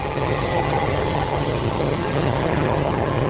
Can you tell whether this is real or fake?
fake